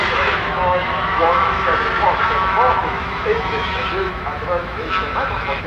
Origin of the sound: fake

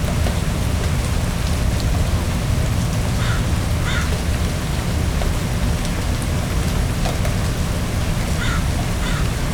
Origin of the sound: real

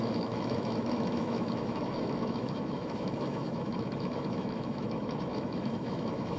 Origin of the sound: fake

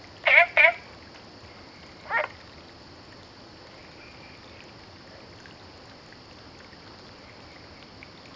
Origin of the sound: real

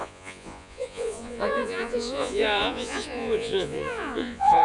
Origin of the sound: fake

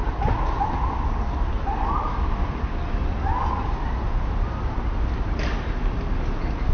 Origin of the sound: real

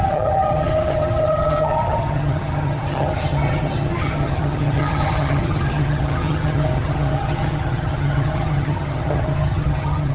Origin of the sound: fake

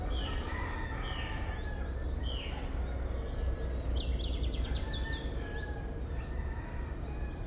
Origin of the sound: real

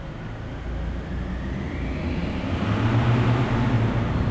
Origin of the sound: real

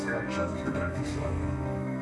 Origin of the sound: fake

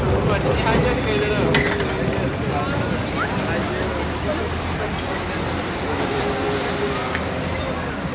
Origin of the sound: real